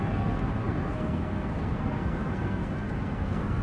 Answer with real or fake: fake